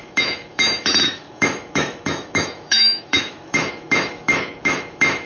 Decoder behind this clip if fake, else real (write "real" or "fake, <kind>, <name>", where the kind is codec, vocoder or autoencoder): fake, autoencoder, DAC-VAE